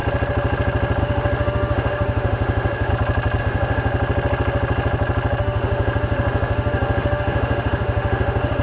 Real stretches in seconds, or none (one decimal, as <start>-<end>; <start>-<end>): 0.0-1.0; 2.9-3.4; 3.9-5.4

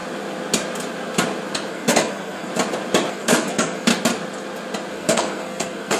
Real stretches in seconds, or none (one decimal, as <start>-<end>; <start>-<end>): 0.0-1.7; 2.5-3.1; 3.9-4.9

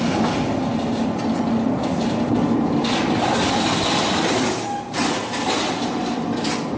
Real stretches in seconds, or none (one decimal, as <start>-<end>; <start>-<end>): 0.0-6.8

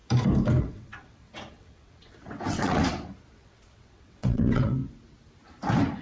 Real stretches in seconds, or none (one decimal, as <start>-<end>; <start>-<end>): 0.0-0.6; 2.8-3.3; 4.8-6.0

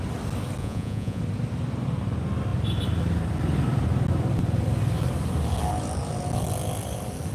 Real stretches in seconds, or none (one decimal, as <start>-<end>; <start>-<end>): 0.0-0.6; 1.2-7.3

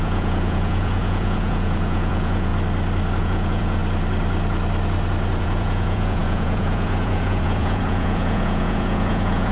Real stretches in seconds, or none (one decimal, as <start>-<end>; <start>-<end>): 2.5-3.2; 3.8-5.4

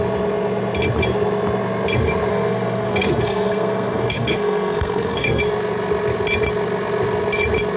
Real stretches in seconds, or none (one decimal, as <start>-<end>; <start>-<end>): 0.0-2.3; 5.4-7.8

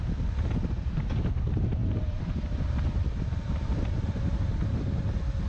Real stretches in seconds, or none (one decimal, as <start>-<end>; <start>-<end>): 0.0-1.8; 4.9-5.5